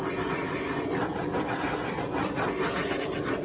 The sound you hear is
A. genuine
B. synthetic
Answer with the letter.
A